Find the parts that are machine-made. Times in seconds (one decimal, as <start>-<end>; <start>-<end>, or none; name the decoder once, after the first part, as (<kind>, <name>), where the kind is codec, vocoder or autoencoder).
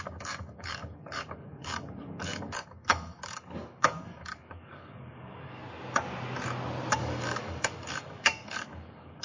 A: 0.0-5.6 (codec, DAC); 7.0-9.2